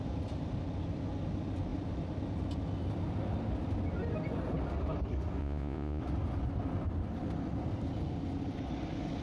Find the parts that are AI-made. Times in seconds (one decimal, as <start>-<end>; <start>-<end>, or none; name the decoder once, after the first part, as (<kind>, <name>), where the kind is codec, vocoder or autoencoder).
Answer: 5.4-6.0 (vocoder, Vocos)